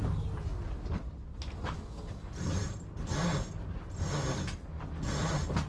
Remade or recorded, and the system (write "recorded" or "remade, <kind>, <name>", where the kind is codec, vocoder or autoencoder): recorded